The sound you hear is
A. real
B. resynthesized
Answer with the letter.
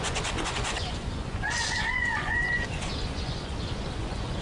B